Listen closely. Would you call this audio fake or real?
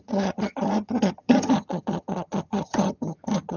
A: fake